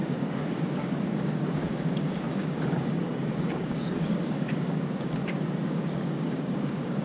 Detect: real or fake fake